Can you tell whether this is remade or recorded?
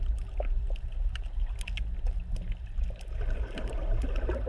recorded